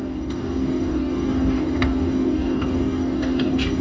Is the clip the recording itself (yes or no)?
no